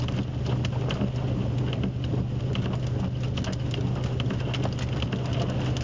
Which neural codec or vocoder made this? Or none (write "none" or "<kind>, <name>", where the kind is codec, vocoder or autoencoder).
none